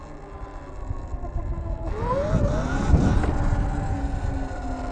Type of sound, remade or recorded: recorded